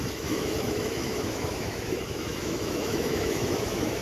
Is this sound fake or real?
fake